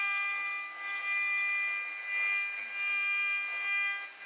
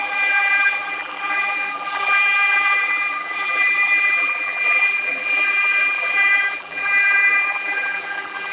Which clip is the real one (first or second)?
first